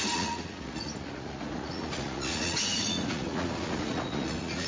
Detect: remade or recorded remade